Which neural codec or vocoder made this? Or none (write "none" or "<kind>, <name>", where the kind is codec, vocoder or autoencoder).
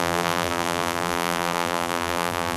vocoder, BigVGAN v2